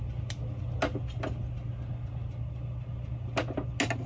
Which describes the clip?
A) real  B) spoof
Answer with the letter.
A